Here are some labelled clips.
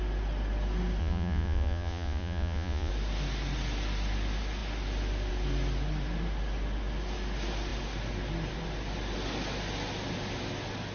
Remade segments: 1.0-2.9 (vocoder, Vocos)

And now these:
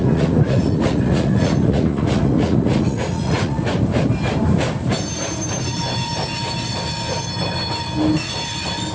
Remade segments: 0.0-3.7 (vocoder, Vocos)

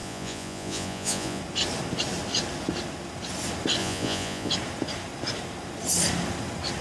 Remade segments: 0.0-1.4 (vocoder, Vocos); 3.8-4.5

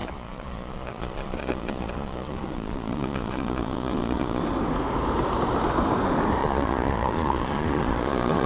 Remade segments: 0.0-4.4 (vocoder, Vocos); 6.4-8.5

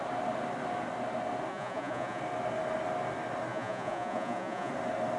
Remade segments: 1.5-2.2 (vocoder, Vocos); 3.5-4.7

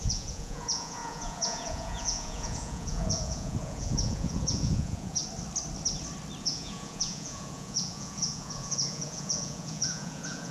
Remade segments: 0.0-5.2 (vocoder, Vocos); 6.4-10.5